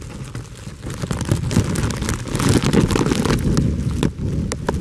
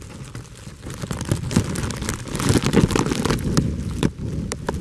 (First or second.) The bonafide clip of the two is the first